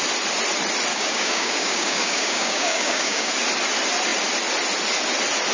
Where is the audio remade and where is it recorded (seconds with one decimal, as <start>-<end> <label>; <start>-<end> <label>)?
0.0-0.9 recorded; 0.9-3.3 remade; 3.3-5.5 recorded